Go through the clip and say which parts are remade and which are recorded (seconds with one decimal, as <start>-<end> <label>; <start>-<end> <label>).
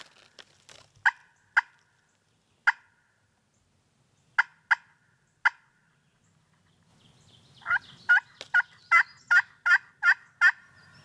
0.0-11.0 recorded